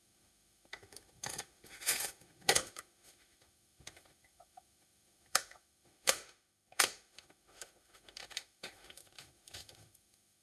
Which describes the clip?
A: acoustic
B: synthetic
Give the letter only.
B